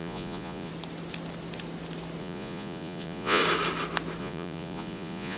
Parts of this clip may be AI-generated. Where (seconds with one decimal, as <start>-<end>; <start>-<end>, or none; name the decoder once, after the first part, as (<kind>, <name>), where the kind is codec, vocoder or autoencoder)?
0.0-0.7 (vocoder, Vocos); 2.2-3.4; 4.2-5.4